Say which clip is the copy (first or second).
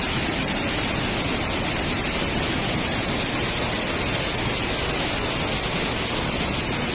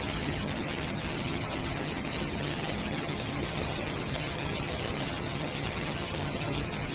second